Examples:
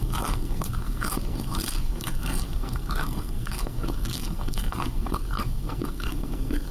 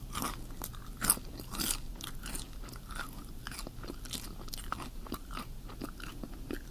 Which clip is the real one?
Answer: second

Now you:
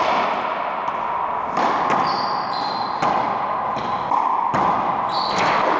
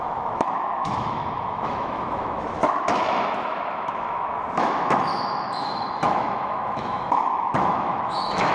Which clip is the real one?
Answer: first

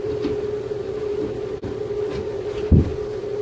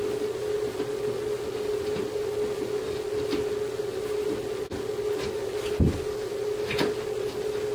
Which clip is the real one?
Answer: second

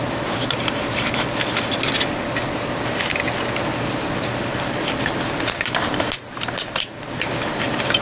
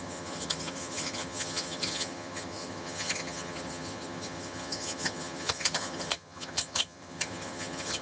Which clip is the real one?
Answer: first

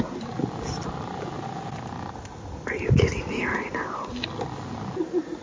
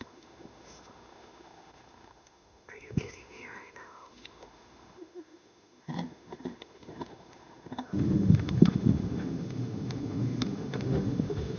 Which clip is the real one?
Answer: first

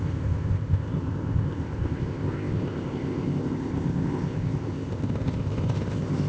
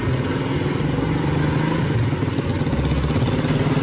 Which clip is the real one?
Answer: second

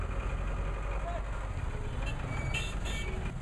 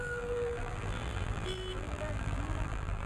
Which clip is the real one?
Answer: first